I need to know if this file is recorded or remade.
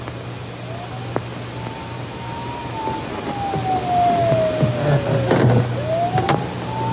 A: recorded